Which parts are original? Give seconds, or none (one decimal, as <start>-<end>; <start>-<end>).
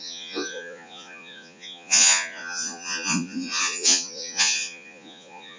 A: none